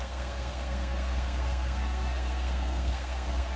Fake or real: fake